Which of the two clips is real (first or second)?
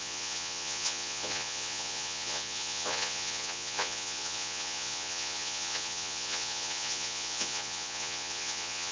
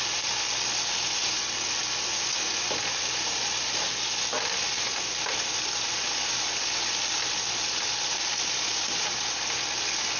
second